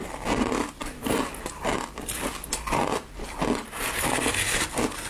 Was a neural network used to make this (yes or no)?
no